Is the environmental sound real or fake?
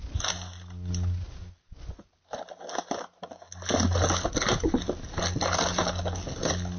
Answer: real